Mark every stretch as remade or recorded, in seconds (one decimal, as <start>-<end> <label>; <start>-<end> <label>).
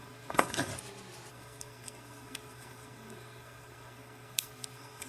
0.0-0.7 remade; 0.7-1.3 recorded; 1.3-5.1 remade